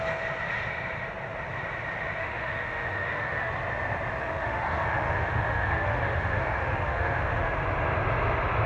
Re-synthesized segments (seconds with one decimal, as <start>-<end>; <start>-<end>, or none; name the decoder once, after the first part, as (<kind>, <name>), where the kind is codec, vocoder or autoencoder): 2.2-3.5 (autoencoder, DAC-VAE); 4.2-7.5